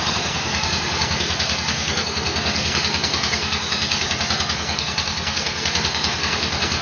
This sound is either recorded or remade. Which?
remade